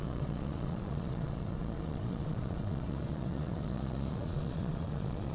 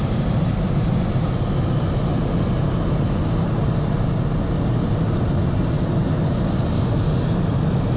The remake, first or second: first